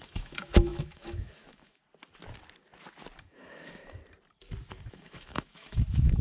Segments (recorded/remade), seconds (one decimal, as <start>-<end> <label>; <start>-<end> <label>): 0.0-1.8 remade; 1.8-3.2 recorded; 3.2-3.8 remade; 3.8-4.9 recorded; 4.9-6.2 remade

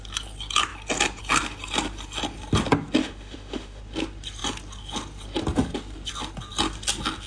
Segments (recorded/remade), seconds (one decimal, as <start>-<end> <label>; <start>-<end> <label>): 0.0-3.0 recorded; 3.0-3.8 remade; 3.8-7.3 recorded

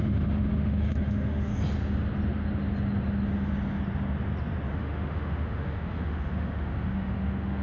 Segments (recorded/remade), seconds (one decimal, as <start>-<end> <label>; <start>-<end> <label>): 0.0-1.5 remade; 1.5-4.7 recorded; 4.7-7.6 remade

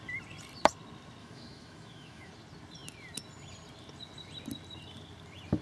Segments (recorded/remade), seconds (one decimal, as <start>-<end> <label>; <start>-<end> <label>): 0.0-1.2 recorded; 1.2-2.3 remade; 2.3-5.6 recorded